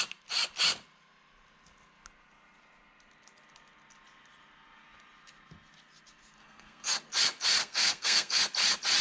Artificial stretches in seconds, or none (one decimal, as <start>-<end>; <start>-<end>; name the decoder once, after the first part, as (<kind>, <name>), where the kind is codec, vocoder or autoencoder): 6.4-6.9 (codec, SNAC); 7.6-8.4